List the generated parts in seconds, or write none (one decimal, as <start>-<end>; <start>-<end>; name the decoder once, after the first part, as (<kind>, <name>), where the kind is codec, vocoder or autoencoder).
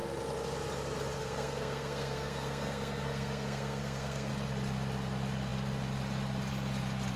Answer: 1.2-4.3 (codec, SNAC)